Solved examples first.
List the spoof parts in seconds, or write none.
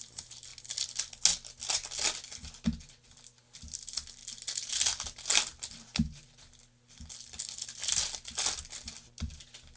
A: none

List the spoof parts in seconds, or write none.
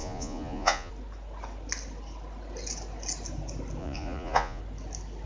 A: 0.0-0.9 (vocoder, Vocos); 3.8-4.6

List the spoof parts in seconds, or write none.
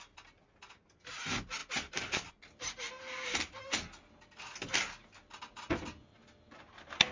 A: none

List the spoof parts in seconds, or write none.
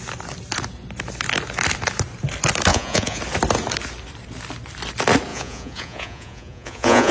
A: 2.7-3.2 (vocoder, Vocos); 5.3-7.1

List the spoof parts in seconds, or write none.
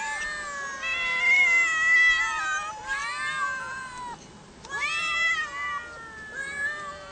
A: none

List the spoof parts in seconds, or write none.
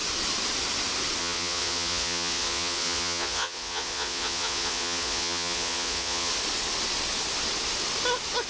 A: 1.2-6.3 (vocoder, Vocos)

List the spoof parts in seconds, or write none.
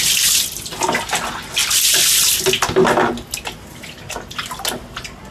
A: none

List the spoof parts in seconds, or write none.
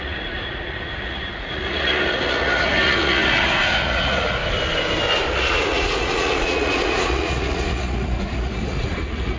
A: 0.0-4.4 (vocoder, Vocos); 5.3-9.4